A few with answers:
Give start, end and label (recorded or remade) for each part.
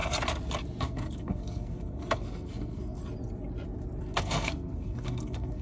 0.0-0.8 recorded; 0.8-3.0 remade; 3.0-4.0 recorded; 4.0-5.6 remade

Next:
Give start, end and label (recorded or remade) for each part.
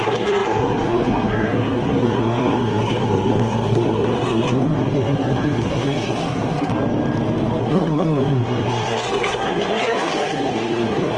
0.0-6.7 remade; 6.7-7.6 recorded; 7.6-11.2 remade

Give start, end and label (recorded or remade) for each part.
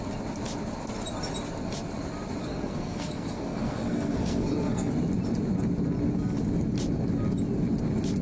0.0-2.4 recorded; 2.4-4.9 remade; 4.9-8.2 recorded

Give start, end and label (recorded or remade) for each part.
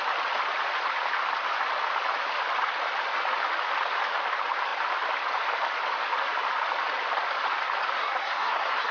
0.0-8.0 recorded; 8.0-8.9 remade